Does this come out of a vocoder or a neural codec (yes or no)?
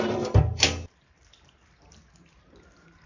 no